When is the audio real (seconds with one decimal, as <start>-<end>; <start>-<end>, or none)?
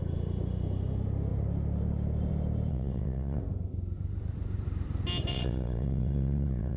0.0-2.7; 3.4-5.3